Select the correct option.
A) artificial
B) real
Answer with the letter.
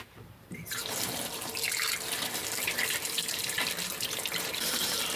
A